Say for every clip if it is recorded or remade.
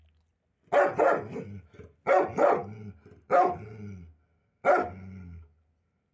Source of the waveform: recorded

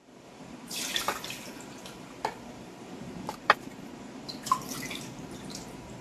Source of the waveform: remade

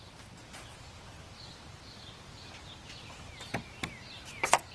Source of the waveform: recorded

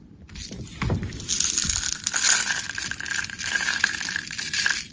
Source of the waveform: recorded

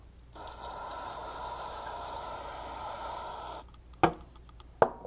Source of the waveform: recorded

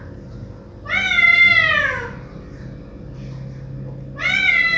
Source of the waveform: recorded